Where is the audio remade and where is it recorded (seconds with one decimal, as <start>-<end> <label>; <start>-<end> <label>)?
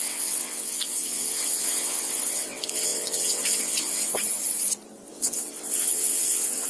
0.0-4.1 remade; 4.1-5.1 recorded; 5.1-6.7 remade